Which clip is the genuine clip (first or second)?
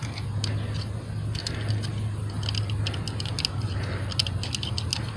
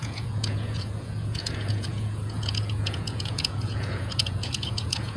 first